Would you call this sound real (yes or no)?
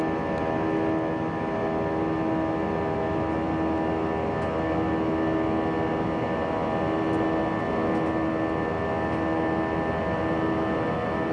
yes